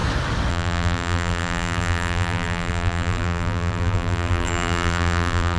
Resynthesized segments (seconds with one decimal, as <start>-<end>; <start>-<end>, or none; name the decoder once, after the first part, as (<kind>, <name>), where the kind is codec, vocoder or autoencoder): 0.5-5.6 (vocoder, BigVGAN v2)